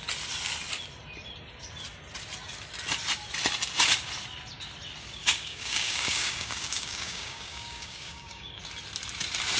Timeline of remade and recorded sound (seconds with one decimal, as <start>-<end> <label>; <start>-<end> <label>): 0.0-5.2 recorded; 5.2-8.6 remade; 8.6-9.6 recorded